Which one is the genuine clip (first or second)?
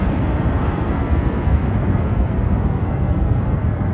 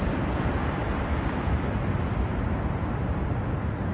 second